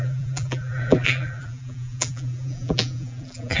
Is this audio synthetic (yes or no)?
yes